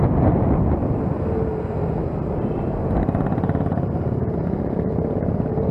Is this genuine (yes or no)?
yes